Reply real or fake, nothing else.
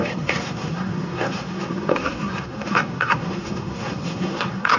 fake